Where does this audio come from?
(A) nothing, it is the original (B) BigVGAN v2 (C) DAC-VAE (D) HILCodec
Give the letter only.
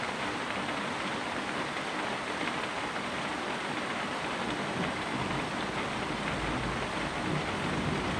A